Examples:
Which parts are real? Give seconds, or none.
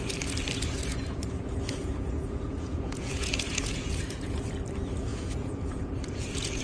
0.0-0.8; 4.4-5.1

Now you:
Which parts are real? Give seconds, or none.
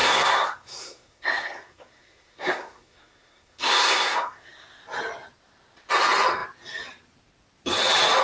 4.8-8.2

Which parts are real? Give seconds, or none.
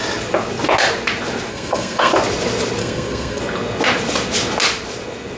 0.0-1.5; 2.1-2.8; 3.4-5.4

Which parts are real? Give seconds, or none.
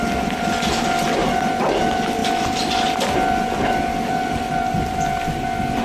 0.0-5.8